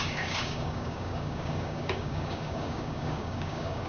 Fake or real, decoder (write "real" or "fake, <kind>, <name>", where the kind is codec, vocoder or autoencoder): fake, codec, DAC